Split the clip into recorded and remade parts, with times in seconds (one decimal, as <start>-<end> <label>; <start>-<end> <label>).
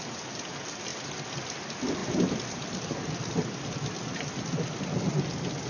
0.0-2.0 recorded; 2.0-4.8 remade; 4.8-5.7 recorded